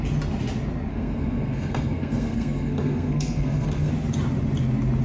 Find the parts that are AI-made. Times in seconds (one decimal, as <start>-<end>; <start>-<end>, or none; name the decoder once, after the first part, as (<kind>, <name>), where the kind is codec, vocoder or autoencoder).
0.9-3.9 (codec, SNAC)